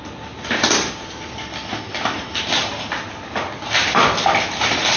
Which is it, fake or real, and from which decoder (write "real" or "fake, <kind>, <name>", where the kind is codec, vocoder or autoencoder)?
real